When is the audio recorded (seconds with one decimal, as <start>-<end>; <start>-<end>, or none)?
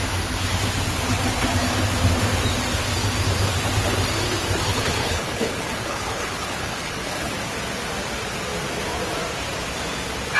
0.0-4.7; 7.3-10.4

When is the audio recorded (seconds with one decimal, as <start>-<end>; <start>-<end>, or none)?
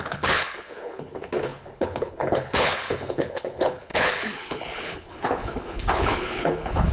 none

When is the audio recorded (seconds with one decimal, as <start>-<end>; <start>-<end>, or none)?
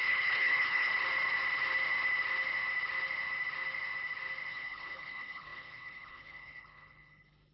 0.9-4.5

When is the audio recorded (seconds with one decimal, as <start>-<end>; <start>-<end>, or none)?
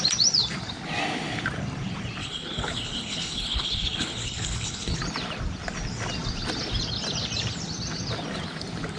0.0-2.2; 5.0-9.0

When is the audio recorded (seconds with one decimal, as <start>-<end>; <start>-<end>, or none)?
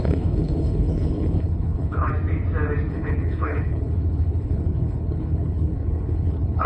2.1-2.9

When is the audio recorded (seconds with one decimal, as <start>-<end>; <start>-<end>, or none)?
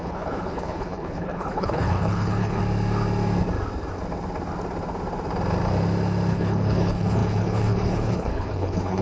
2.6-6.3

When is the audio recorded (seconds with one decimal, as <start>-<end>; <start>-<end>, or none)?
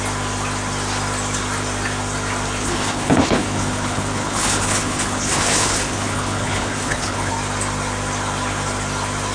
0.0-2.6; 7.3-9.3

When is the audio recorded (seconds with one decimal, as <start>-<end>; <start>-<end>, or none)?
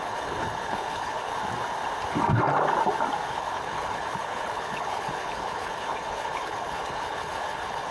1.3-3.3